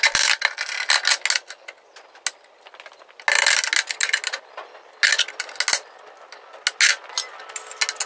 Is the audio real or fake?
real